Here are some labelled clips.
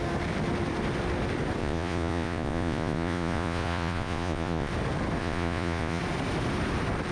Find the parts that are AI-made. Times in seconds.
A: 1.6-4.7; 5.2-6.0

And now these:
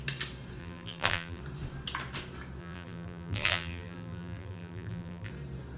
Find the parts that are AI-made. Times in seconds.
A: 0.6-1.4; 2.6-5.3

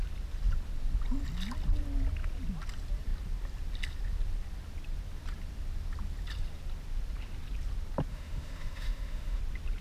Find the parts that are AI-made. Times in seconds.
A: 8.1-9.4

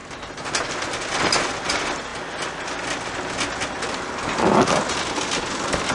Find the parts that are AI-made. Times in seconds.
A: none

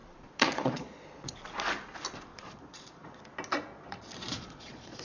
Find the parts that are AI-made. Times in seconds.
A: 0.0-1.3; 2.3-3.2; 3.7-5.0

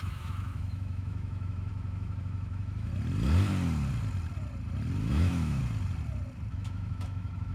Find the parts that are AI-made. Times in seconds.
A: 0.0-2.9; 5.1-5.6; 6.5-7.5

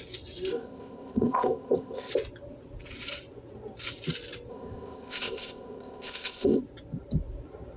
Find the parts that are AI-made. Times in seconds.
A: 0.5-2.1; 4.5-6.6

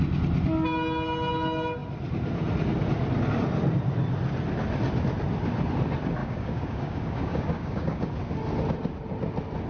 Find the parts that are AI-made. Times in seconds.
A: 6.2-8.2